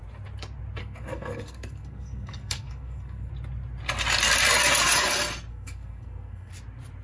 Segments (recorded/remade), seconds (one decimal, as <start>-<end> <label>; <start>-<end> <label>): 0.0-0.8 recorded; 0.8-3.3 remade; 3.3-5.5 recorded; 5.5-6.5 remade; 6.5-7.0 recorded